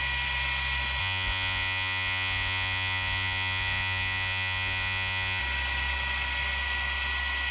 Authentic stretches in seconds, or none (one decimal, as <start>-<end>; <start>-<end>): 0.0-1.0; 5.4-7.5